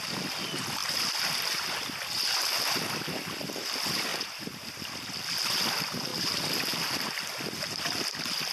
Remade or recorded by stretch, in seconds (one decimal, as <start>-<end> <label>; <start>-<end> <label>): 0.0-4.1 recorded; 4.1-4.8 remade; 4.8-8.5 recorded